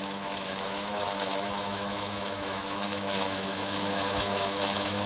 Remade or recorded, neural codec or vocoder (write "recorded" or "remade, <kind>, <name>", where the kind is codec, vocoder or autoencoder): remade, autoencoder, DAC-VAE